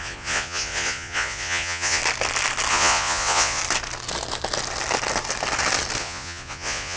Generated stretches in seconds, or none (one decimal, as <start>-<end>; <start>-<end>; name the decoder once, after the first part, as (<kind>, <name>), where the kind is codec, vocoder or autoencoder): 0.0-2.0 (vocoder, Vocos); 2.7-3.6; 6.0-7.0